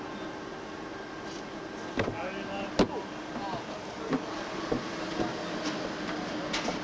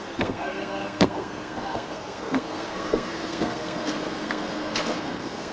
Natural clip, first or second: first